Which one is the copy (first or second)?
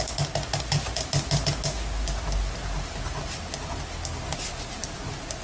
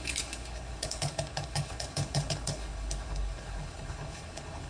second